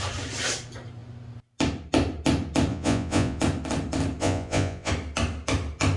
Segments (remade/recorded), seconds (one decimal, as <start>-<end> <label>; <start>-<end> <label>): 0.0-2.7 recorded; 2.7-3.4 remade; 3.4-4.2 recorded; 4.2-4.9 remade; 4.9-6.0 recorded